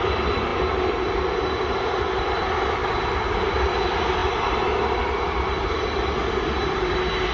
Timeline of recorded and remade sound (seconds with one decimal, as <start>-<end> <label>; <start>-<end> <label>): 0.0-0.5 remade; 0.5-1.9 recorded; 1.9-2.8 remade; 2.8-3.5 recorded; 3.5-7.3 remade